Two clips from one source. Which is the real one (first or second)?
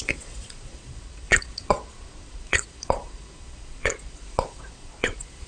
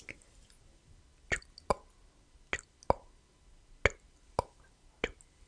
second